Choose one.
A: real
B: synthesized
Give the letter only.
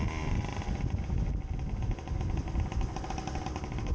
A